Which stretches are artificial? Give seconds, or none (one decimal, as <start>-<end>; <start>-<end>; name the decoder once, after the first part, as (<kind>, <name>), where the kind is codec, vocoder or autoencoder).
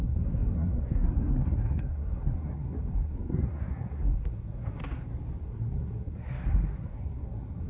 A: 0.0-4.8 (codec, SNAC); 5.4-7.7